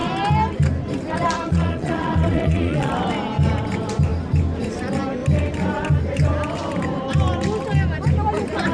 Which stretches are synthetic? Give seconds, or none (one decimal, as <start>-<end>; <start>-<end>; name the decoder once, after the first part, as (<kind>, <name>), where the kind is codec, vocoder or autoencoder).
1.5-2.9 (vocoder, Vocos)